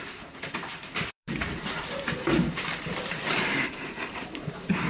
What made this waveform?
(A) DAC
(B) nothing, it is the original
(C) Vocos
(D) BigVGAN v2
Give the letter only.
D